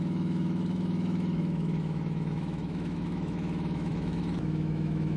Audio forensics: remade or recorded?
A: remade